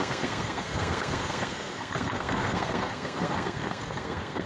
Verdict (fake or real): fake